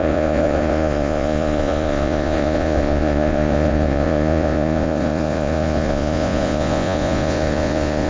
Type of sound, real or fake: fake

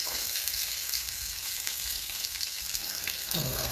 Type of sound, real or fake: fake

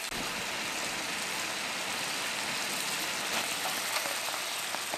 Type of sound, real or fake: real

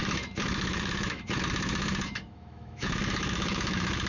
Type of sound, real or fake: fake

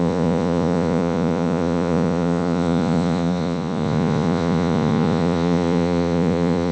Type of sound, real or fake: fake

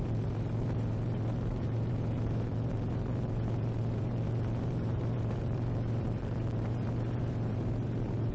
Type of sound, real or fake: fake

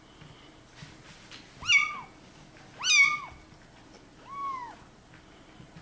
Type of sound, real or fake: real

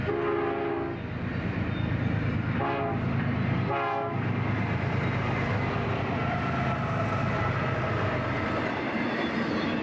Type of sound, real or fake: real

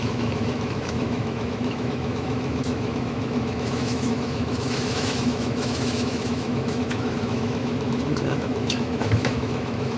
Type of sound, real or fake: fake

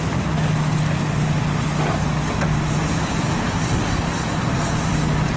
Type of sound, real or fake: real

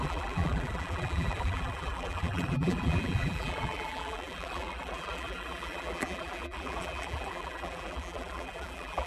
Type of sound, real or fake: fake